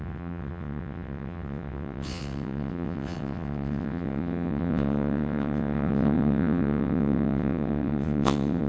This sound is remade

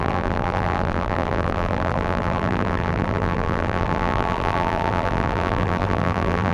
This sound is remade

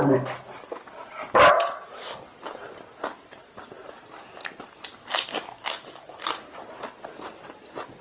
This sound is recorded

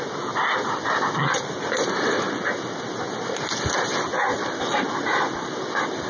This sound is recorded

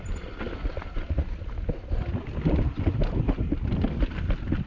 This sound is recorded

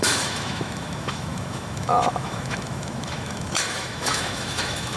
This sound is remade